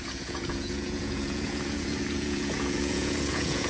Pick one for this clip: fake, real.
fake